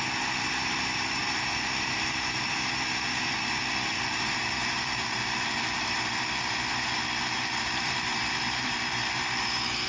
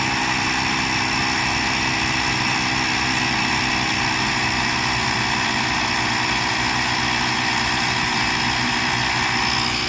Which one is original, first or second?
second